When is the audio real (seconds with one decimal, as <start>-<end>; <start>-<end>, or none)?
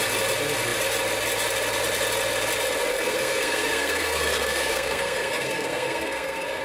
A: 0.0-2.9